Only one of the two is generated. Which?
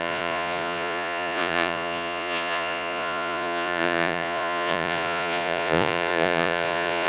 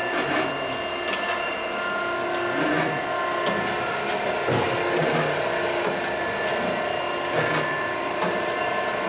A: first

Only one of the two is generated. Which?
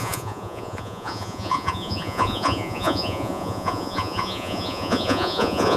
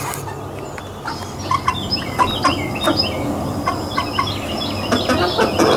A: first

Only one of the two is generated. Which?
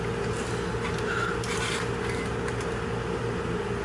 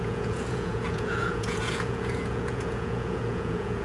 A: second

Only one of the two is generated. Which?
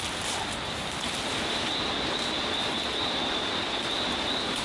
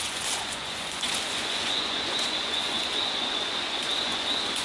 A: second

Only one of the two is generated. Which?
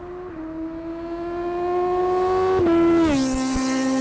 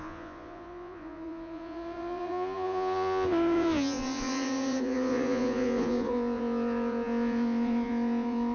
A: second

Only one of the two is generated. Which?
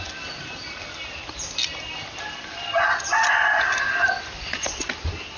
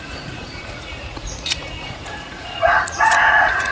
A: second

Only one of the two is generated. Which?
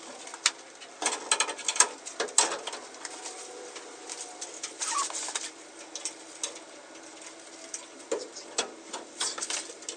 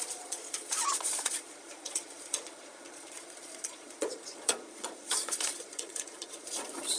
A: second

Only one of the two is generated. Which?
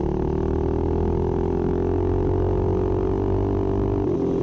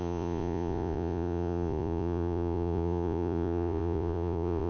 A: second